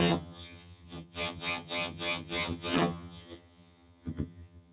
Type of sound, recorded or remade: remade